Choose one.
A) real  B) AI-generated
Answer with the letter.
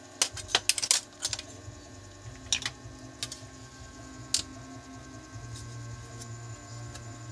A